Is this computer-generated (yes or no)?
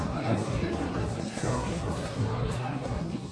yes